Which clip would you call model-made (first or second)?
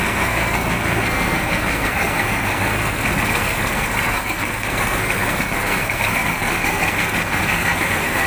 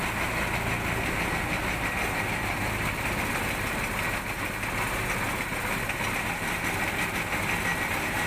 first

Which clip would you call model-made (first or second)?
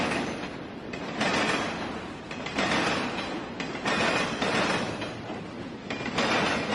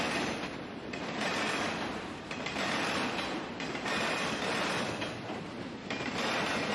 second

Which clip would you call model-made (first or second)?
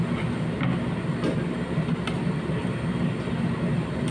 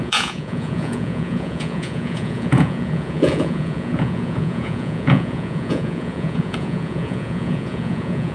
second